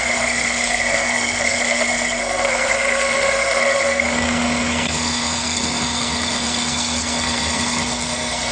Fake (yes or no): yes